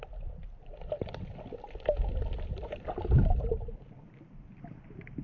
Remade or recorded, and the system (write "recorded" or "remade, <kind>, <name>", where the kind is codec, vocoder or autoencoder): recorded